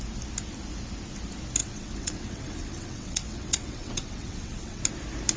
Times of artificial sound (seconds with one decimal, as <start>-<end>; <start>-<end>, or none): 1.6-4.8